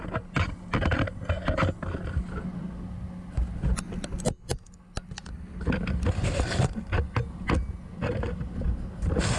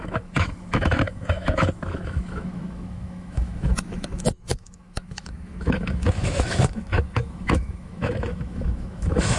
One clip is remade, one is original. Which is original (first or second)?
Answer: first